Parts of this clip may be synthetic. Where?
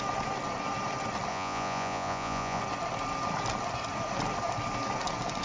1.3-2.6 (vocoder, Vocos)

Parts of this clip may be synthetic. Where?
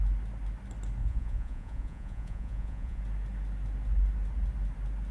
1.0-3.0 (vocoder, Vocos)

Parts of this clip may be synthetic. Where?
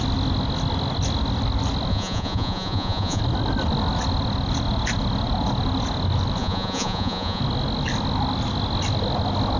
1.9-3.2 (vocoder, Vocos); 6.4-7.4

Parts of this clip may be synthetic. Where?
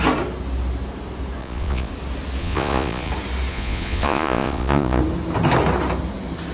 1.4-1.9 (vocoder, Vocos); 2.4-3.1; 3.5-5.0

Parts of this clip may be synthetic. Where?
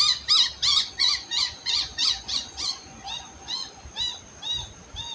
0.7-3.8 (vocoder, Vocos)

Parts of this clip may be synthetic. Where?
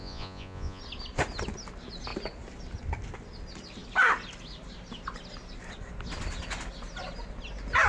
0.0-0.8 (vocoder, Vocos)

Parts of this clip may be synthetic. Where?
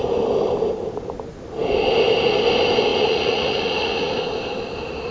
2.9-4.1 (vocoder, Vocos)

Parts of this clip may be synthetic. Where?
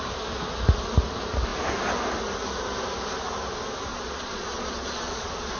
3.9-5.6 (vocoder, Vocos)